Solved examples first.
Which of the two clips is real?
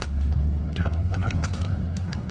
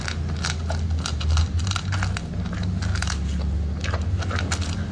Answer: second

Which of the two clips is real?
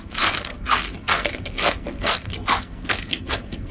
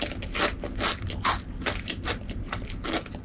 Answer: second